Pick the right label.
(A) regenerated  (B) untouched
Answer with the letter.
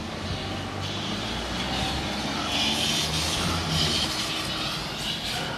B